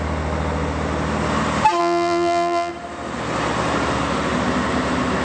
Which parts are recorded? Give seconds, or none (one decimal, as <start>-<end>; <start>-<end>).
0.0-1.8; 2.7-5.2